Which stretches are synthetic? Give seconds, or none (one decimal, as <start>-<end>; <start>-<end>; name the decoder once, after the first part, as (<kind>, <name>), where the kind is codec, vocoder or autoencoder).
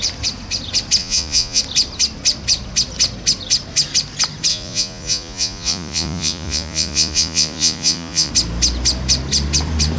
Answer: 1.0-1.6 (vocoder, Vocos); 4.5-8.3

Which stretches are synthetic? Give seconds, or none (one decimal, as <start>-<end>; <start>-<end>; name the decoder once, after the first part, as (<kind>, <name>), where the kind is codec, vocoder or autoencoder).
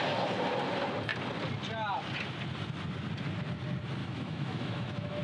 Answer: 4.0-5.2 (autoencoder, DAC-VAE)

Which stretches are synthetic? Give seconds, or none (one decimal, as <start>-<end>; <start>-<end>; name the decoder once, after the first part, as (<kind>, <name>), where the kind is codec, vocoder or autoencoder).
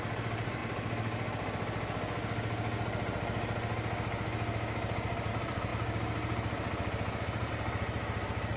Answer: 0.0-0.6 (vocoder, BigVGAN v2); 5.3-8.6